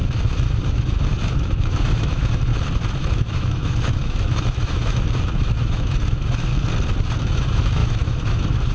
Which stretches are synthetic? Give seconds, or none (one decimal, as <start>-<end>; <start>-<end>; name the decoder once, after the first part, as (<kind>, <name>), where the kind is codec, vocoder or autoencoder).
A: 0.0-2.5 (autoencoder, DAC-VAE); 3.0-6.5; 7.2-8.7